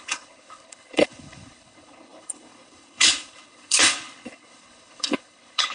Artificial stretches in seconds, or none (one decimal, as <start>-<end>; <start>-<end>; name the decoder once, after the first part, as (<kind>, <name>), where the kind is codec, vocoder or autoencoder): 0.0-5.7 (codec, HILCodec)